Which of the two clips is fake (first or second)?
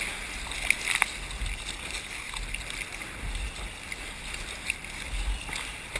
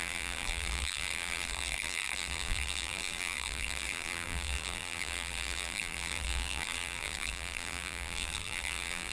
second